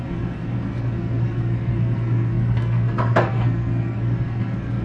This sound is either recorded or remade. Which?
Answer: remade